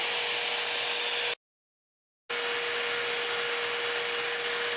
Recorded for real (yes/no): yes